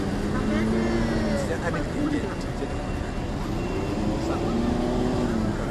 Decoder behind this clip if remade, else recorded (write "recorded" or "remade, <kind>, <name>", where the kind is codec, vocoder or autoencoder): recorded